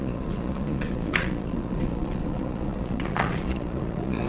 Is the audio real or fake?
fake